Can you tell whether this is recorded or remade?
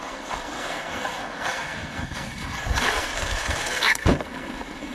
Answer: remade